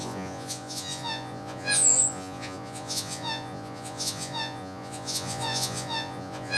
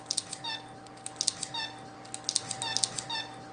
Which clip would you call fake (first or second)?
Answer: first